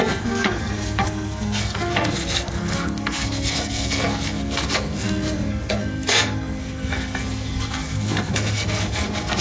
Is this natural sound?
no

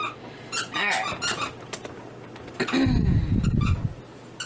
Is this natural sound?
yes